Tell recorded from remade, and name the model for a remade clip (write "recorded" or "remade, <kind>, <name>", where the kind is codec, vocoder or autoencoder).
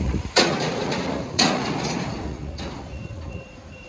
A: remade, vocoder, Vocos